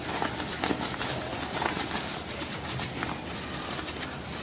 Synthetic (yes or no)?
no